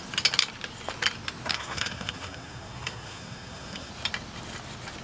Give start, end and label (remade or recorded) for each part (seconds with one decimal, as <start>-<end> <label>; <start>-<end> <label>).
0.0-1.5 recorded; 1.5-3.9 remade; 3.9-5.0 recorded